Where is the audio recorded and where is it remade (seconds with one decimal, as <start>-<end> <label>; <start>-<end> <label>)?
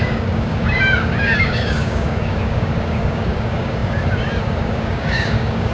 0.0-5.7 remade